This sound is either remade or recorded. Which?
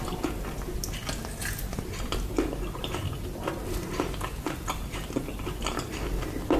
recorded